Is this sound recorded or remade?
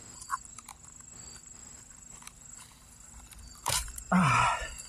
remade